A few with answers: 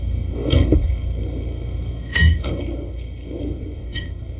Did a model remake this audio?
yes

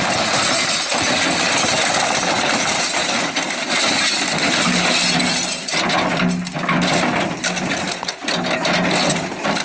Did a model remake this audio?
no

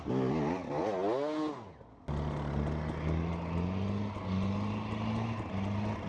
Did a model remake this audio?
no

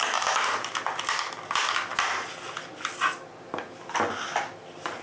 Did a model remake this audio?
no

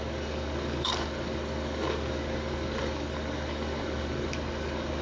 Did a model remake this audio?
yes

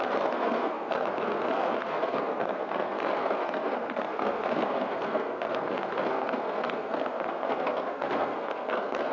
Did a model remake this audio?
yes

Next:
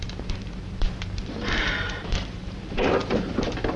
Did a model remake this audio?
yes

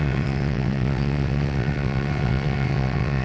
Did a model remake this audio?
yes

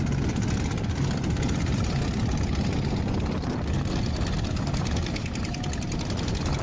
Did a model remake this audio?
no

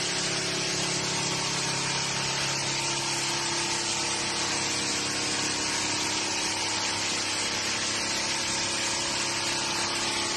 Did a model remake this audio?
no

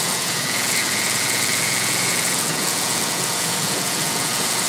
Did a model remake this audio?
yes